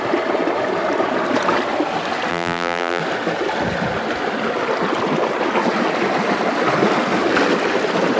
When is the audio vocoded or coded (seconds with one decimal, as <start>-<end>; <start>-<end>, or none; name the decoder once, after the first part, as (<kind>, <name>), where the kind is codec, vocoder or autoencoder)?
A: 2.3-3.0 (vocoder, BigVGAN v2)